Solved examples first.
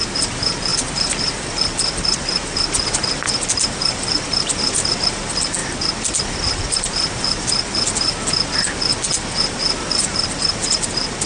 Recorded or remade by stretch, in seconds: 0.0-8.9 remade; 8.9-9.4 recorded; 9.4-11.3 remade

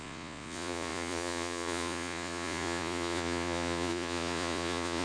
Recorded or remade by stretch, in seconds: 0.0-5.0 remade

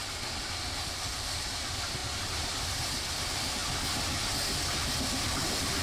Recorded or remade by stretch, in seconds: 0.0-0.8 recorded; 0.8-2.0 remade; 2.0-2.7 recorded; 2.7-3.6 remade; 3.6-5.2 recorded; 5.2-5.8 remade

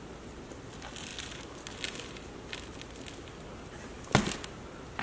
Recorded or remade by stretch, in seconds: 0.0-5.0 recorded

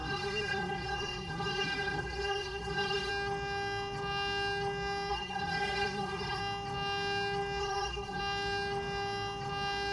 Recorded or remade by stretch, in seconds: 0.0-3.1 remade; 3.1-5.1 recorded; 5.1-6.4 remade; 6.4-7.6 recorded; 7.6-8.2 remade; 8.2-9.9 recorded

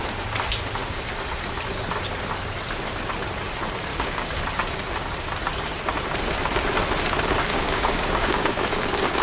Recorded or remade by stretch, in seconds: 0.0-3.9 recorded; 3.9-4.4 remade; 4.4-7.5 recorded; 7.5-9.2 remade